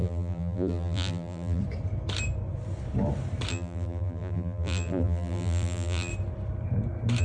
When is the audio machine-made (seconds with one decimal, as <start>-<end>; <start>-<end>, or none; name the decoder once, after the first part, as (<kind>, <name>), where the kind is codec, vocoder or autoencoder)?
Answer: 0.0-1.6 (vocoder, BigVGAN v2); 3.5-6.1